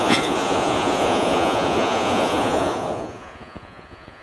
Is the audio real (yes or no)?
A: no